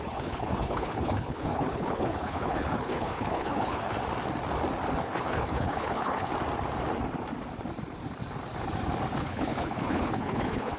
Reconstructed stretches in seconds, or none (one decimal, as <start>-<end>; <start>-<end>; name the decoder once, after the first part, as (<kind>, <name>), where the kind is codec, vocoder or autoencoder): 0.0-4.0 (codec, HILCodec); 5.0-6.3; 9.2-10.8